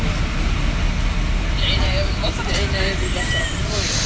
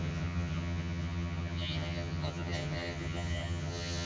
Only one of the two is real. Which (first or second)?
first